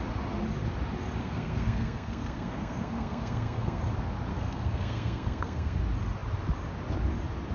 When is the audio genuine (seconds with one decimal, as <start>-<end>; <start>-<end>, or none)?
0.0-1.2; 3.8-4.3; 5.8-7.5